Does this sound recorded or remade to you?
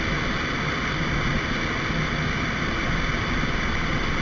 recorded